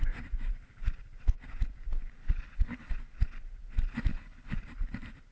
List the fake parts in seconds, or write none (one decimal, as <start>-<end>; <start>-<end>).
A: 2.2-2.9; 4.1-4.6